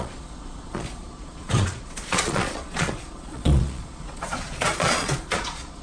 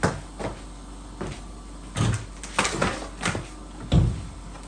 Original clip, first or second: second